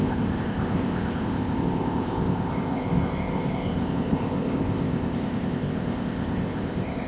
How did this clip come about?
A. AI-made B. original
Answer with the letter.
A